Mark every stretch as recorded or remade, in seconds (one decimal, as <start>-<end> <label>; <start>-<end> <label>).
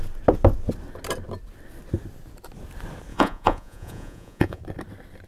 0.0-3.1 recorded; 3.1-4.6 remade; 4.6-5.3 recorded